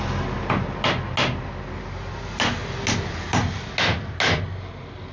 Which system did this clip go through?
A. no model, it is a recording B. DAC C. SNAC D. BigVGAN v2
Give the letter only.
A